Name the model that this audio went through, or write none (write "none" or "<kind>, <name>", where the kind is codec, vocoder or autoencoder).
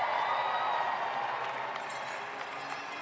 none